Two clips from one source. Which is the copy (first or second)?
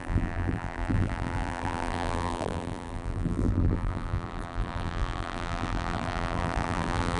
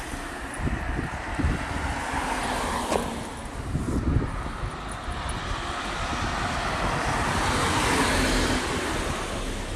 first